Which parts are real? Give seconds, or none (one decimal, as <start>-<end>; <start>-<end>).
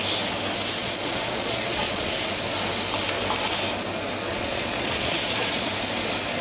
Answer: 0.0-0.8; 2.1-4.3; 5.7-6.4